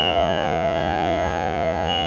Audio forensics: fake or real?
fake